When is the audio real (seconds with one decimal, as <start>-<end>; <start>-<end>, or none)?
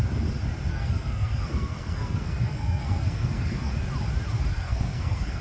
0.0-0.7; 3.7-4.5